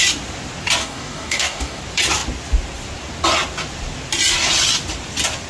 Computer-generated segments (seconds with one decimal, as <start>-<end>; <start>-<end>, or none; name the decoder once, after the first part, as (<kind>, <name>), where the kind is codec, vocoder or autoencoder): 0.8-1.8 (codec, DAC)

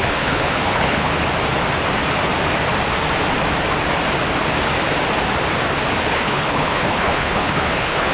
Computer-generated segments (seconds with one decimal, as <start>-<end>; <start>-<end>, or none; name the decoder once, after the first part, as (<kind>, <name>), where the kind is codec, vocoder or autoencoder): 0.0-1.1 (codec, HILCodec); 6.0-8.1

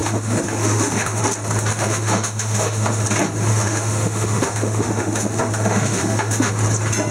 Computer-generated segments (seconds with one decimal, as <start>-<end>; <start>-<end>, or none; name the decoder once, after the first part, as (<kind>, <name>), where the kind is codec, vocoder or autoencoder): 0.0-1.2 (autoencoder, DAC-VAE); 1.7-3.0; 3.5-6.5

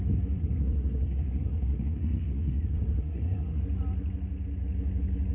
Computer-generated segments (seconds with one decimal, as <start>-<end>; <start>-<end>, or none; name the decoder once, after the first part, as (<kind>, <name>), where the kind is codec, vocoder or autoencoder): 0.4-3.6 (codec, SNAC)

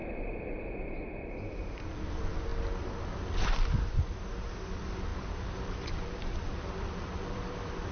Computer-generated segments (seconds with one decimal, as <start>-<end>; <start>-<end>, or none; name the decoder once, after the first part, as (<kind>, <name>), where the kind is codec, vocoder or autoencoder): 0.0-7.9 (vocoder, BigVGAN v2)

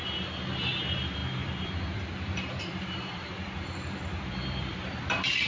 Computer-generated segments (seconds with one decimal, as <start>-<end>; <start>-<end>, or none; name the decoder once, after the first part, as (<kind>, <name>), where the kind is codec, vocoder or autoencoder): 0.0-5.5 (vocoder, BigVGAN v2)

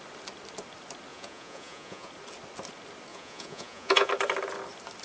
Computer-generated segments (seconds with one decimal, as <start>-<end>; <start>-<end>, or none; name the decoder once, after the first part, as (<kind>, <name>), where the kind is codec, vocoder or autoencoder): 1.1-2.1 (vocoder, Vocos); 3.1-4.1

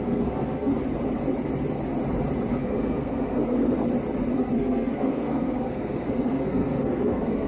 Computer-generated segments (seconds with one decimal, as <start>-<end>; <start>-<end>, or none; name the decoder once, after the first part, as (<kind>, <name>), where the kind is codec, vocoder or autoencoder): 0.0-0.7 (codec, SNAC); 2.5-3.8; 4.3-7.5